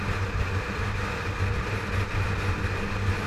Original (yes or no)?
yes